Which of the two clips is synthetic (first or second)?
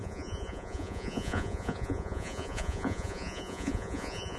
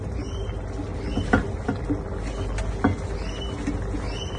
first